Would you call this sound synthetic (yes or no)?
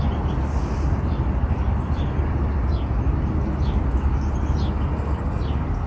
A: no